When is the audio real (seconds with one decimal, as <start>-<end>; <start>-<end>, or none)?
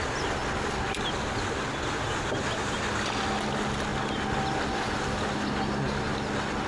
0.0-6.7